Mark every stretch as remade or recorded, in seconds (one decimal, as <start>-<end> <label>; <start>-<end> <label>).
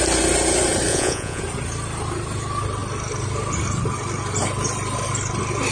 0.0-0.9 recorded; 0.9-1.4 remade; 1.4-5.7 recorded